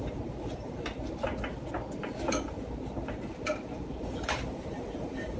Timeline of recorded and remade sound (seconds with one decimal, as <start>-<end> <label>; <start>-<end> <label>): 0.0-1.3 remade; 1.3-3.0 recorded; 3.0-5.4 remade